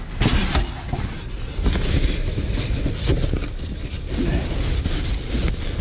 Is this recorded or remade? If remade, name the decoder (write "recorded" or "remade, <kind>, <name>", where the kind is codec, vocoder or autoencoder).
recorded